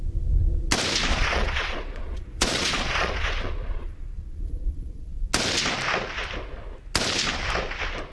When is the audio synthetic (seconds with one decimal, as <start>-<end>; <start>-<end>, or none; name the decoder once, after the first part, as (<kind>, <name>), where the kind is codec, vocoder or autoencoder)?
1.1-5.3 (vocoder, Vocos)

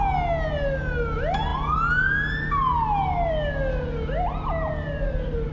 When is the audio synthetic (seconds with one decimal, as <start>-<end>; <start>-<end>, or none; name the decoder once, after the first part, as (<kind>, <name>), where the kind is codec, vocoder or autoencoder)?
none

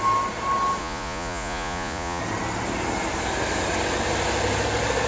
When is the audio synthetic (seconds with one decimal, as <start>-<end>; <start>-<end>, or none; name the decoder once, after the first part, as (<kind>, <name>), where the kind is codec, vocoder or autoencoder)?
0.8-2.2 (vocoder, Vocos)

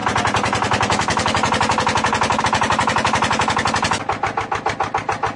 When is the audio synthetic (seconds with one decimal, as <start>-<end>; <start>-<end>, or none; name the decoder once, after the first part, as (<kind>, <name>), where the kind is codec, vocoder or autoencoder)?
none